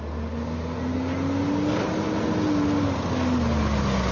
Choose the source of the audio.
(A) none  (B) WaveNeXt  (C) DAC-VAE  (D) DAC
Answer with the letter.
A